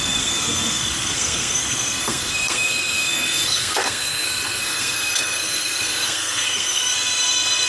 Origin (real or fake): fake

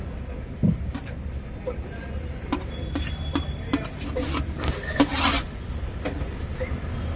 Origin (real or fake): real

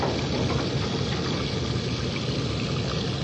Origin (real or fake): real